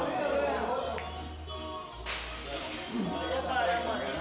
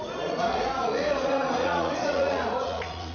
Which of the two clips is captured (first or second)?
first